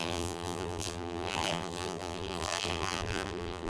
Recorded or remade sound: remade